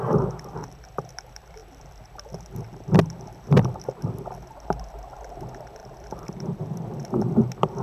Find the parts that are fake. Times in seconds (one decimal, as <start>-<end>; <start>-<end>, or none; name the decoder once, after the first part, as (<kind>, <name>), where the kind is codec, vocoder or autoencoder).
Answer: 5.8-6.9 (vocoder, BigVGAN v2)

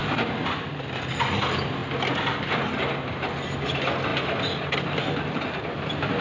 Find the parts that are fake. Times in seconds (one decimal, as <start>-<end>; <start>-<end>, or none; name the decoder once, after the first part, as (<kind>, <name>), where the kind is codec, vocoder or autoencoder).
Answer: none

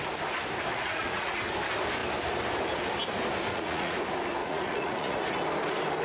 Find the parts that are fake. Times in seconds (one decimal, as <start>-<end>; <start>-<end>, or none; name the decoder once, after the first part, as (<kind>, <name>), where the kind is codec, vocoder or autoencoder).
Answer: 0.7-1.4 (vocoder, Vocos); 3.5-4.0; 4.4-5.2

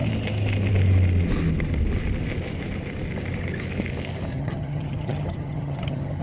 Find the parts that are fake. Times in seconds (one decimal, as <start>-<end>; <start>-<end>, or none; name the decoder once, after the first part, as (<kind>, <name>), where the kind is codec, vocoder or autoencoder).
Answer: 4.3-6.2 (vocoder, HiFi-GAN)

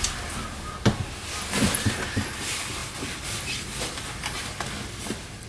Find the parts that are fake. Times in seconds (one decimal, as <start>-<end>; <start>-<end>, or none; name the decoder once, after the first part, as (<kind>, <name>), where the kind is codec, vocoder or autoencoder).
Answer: none

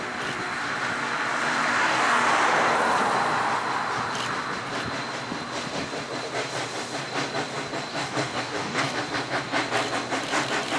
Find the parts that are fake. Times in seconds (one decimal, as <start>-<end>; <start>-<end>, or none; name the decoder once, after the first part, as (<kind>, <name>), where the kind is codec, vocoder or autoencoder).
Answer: 1.7-2.2 (codec, DAC); 7.9-9.0